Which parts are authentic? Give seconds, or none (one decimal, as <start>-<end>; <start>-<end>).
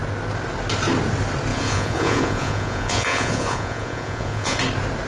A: 0.0-1.5; 4.6-5.1